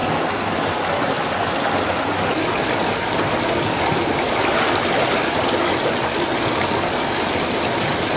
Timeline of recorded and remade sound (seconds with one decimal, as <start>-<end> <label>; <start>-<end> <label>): 0.0-5.3 recorded; 5.3-5.8 remade; 5.8-8.2 recorded